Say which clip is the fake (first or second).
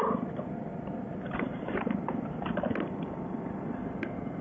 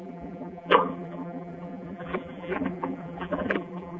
second